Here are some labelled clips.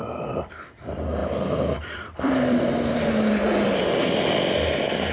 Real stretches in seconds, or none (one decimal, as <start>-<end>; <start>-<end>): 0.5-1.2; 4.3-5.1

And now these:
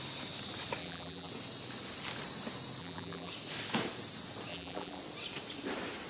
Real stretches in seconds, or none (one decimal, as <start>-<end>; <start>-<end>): 0.0-0.8; 1.3-2.8; 3.3-4.5; 5.0-6.1

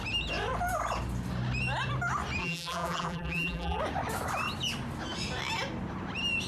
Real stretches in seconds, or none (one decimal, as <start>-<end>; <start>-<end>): 0.0-2.4; 3.8-6.5

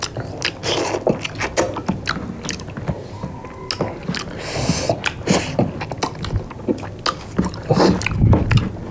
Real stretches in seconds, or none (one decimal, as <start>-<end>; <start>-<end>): 0.0-8.9